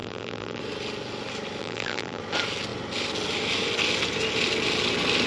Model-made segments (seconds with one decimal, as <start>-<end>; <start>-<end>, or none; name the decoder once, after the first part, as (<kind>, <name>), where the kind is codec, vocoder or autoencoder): 0.0-0.6 (vocoder, BigVGAN v2); 1.6-2.2